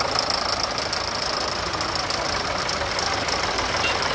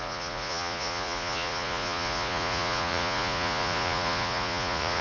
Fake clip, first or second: second